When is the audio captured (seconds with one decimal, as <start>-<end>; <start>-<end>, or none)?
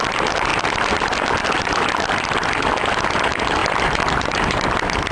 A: 3.6-4.1